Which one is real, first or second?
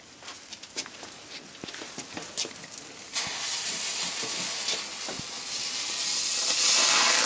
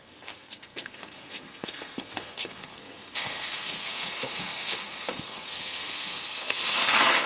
first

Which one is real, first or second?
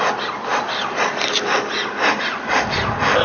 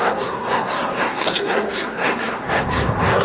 first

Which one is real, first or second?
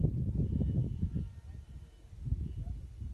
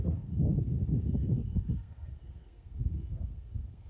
first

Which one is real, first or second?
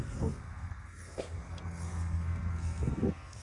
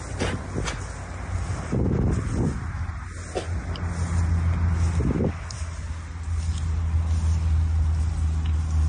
second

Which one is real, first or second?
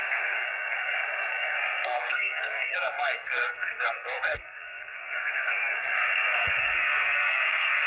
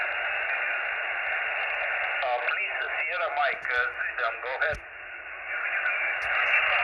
second